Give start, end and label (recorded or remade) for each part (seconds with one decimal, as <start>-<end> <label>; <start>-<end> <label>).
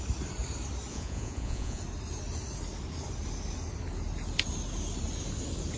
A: 0.0-0.9 recorded; 0.9-1.8 remade; 1.8-5.8 recorded